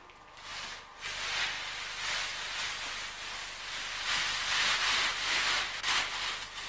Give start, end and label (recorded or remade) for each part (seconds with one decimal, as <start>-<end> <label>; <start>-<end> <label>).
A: 0.0-2.3 recorded; 2.3-2.9 remade; 2.9-5.1 recorded; 5.1-5.8 remade; 5.8-6.7 recorded